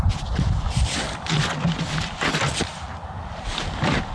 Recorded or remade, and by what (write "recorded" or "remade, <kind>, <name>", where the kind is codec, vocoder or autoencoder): remade, vocoder, BigVGAN v2